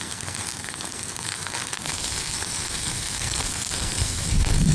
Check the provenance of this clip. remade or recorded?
remade